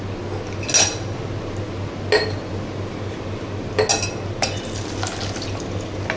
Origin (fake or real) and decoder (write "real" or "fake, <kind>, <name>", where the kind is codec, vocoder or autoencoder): real